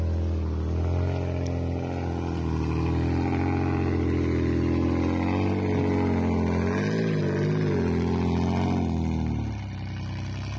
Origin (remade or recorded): recorded